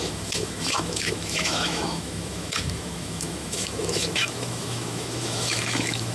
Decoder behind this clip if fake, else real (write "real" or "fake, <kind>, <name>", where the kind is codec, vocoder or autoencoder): fake, autoencoder, DAC-VAE